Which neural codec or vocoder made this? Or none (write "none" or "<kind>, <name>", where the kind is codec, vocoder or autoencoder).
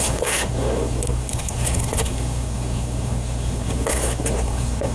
codec, SNAC